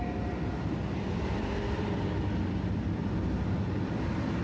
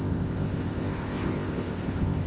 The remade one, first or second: second